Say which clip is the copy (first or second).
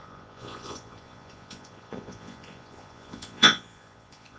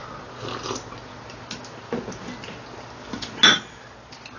first